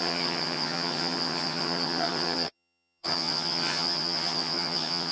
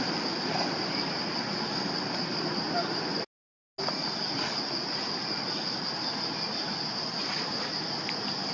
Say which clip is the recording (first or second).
second